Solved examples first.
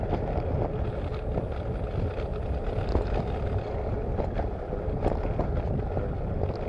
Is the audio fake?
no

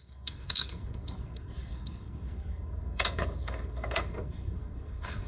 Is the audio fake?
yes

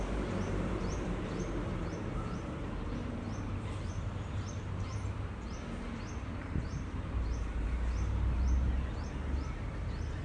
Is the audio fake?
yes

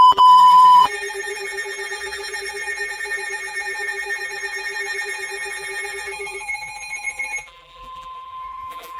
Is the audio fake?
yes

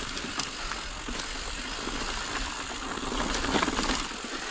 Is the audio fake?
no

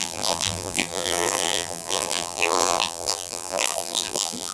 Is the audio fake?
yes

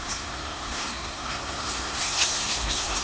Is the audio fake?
yes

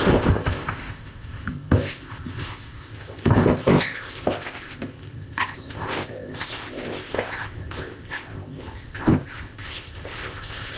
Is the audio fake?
yes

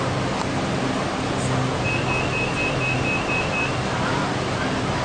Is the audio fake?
no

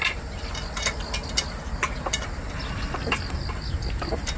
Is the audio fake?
no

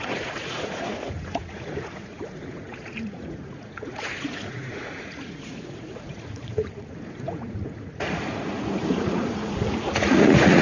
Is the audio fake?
yes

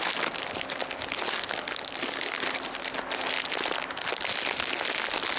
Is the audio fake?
no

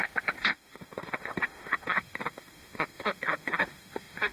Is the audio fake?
yes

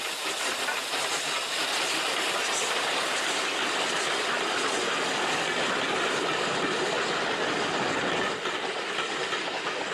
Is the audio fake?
no